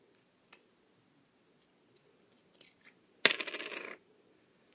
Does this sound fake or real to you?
real